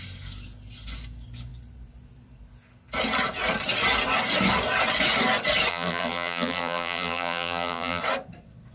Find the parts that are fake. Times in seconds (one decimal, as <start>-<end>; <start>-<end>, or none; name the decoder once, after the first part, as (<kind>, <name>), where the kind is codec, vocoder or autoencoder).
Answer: 5.7-8.0 (vocoder, BigVGAN v2)